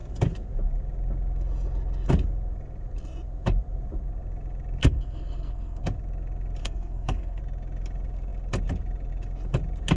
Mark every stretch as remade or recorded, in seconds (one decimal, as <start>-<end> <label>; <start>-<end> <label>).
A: 0.0-4.8 recorded; 4.8-5.8 remade; 5.8-6.6 recorded; 6.6-7.4 remade; 7.4-10.0 recorded